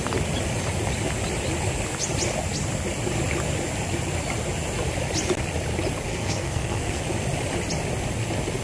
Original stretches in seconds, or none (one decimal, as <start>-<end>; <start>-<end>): 0.0-6.1; 7.0-8.6